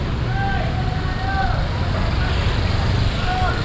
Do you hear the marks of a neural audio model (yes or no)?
no